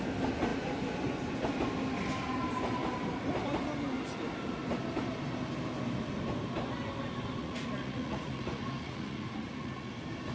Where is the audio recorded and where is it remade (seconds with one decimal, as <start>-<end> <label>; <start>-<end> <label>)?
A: 0.0-7.4 recorded; 7.4-9.9 remade; 9.9-10.3 recorded